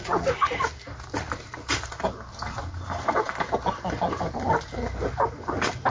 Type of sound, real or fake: real